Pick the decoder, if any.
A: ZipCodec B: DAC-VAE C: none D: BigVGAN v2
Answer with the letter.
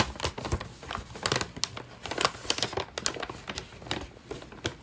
C